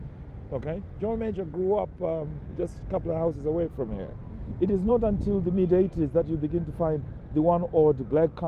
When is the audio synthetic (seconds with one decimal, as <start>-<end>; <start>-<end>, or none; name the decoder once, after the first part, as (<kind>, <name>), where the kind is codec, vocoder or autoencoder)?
none